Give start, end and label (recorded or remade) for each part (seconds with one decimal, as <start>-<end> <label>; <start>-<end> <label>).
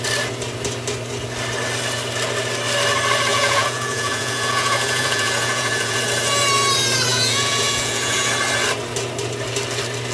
0.0-3.3 recorded; 3.3-6.0 remade; 6.0-7.1 recorded; 7.1-8.3 remade; 8.3-10.1 recorded